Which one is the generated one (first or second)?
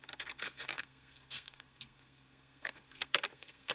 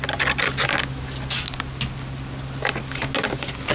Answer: first